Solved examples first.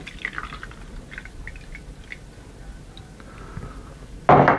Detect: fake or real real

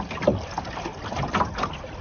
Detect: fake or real real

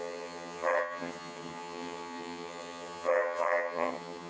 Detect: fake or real fake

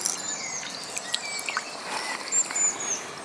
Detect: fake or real real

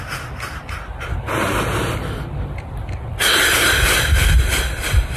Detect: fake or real real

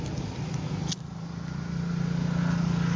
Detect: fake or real real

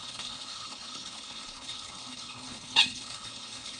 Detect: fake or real fake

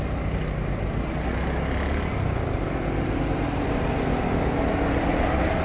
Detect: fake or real real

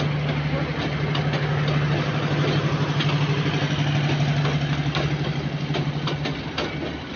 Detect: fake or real real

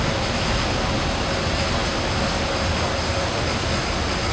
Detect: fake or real real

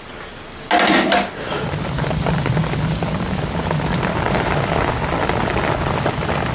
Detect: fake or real real